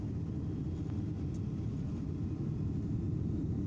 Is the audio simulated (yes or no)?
no